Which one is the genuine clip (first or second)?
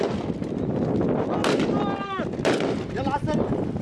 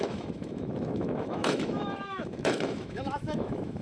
first